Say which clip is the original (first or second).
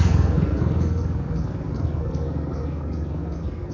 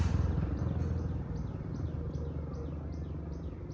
second